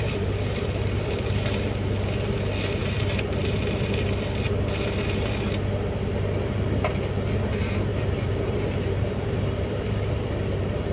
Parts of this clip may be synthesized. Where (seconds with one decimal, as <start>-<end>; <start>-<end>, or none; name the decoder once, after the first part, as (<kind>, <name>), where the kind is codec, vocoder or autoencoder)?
2.8-3.6 (vocoder, BigVGAN v2); 7.9-10.1